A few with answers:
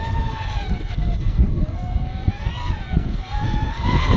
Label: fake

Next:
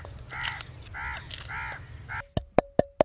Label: real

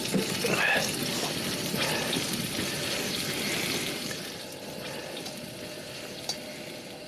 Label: real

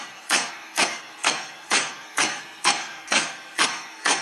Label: fake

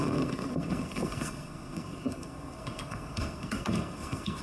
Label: fake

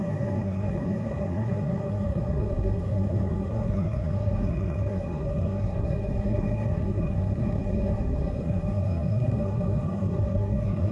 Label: fake